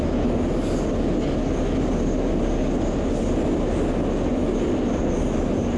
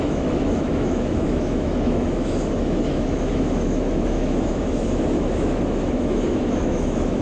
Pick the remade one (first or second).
second